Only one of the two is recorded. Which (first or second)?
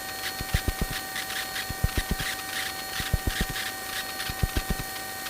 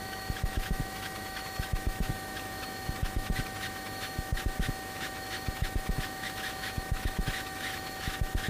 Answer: first